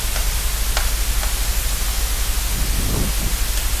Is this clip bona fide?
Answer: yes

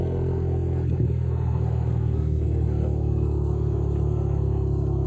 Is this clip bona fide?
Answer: no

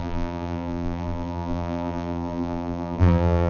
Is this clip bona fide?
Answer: no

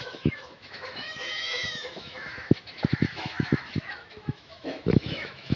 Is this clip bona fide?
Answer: no